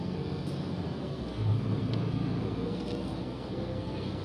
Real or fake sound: fake